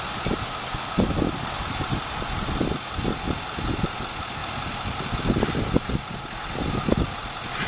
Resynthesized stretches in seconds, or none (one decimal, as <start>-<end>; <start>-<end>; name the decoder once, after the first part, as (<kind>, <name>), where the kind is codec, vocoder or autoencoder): none